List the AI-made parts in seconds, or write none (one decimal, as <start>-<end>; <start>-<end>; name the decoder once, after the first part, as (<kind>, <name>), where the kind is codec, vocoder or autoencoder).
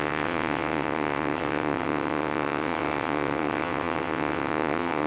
0.0-5.1 (vocoder, WaveNeXt)